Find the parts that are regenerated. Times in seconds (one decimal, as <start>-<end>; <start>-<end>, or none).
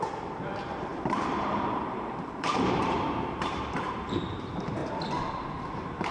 0.0-4.8; 5.3-6.1